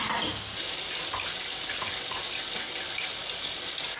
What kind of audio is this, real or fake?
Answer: real